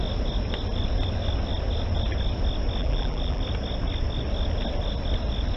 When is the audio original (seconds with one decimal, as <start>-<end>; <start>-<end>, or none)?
0.0-2.8; 3.4-5.6